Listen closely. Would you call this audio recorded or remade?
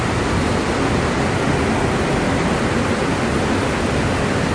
recorded